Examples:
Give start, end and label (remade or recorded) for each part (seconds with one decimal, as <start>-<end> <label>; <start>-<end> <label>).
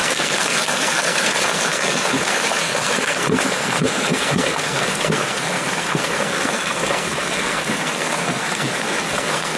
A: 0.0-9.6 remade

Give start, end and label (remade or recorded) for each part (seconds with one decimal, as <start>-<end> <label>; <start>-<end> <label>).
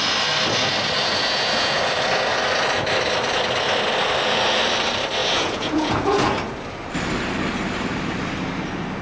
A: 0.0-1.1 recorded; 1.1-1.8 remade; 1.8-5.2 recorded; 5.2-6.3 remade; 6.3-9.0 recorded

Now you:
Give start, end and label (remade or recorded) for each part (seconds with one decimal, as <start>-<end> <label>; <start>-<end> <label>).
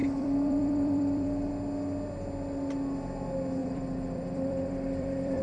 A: 0.0-1.5 remade; 1.5-3.6 recorded; 3.6-5.4 remade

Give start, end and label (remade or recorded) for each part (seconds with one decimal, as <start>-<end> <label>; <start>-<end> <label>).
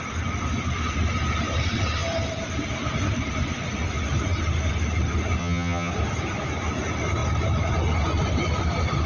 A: 0.0-5.4 recorded; 5.4-5.9 remade; 5.9-9.1 recorded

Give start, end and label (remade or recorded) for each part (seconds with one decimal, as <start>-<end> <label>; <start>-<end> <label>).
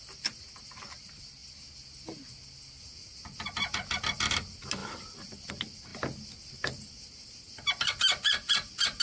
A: 0.0-4.8 recorded; 4.8-5.5 remade; 5.5-9.0 recorded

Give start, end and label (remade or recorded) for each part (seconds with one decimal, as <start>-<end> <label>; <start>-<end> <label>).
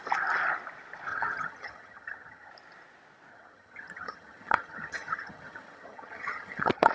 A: 0.0-1.1 recorded; 1.1-2.5 remade; 2.5-3.3 recorded; 3.3-6.9 remade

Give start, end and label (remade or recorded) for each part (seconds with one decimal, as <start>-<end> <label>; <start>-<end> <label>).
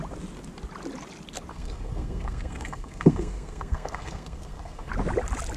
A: 0.0-1.5 recorded; 1.5-4.9 remade; 4.9-5.6 recorded